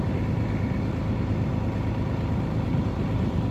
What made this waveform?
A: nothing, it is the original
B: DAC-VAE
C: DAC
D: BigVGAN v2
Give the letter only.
D